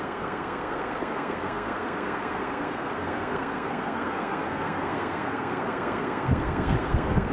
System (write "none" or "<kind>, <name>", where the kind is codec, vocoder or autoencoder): codec, SNAC